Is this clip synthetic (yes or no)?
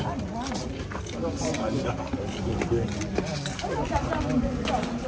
no